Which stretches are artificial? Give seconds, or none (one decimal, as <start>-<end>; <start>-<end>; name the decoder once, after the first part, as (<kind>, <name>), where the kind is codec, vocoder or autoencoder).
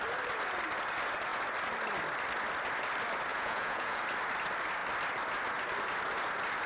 3.3-4.0 (vocoder, Vocos)